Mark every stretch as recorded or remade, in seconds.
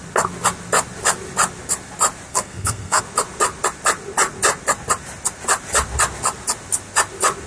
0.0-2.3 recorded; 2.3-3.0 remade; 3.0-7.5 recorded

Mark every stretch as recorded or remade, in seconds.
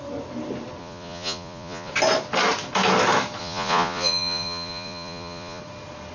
0.0-0.8 recorded; 0.8-1.9 remade; 1.9-3.4 recorded; 3.4-5.6 remade; 5.6-6.1 recorded